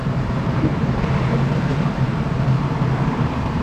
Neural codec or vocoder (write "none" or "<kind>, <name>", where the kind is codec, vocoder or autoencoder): vocoder, BigVGAN v2